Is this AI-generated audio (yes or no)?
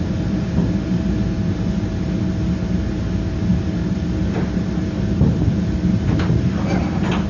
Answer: no